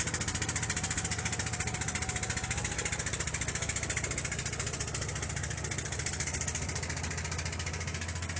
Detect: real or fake real